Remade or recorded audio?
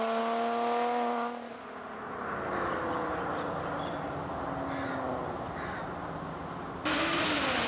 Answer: recorded